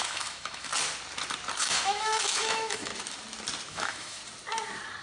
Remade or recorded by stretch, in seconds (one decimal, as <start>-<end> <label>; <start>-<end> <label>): 0.0-0.7 remade; 0.7-1.6 recorded; 1.6-2.9 remade; 2.9-3.7 recorded; 3.7-4.2 remade; 4.2-5.0 recorded